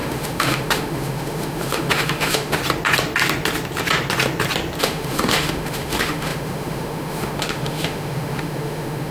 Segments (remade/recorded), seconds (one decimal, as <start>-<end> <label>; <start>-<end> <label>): 0.0-2.6 remade; 2.6-4.8 recorded; 4.8-9.1 remade